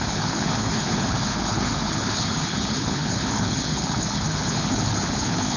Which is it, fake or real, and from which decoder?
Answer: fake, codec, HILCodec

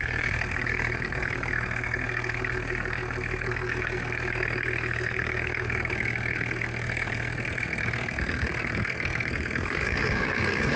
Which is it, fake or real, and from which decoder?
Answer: fake, codec, SNAC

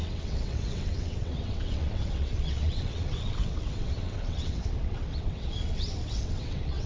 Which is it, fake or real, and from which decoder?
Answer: fake, vocoder, WaveNeXt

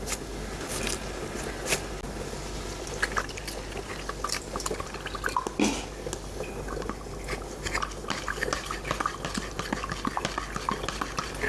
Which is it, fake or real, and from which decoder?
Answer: real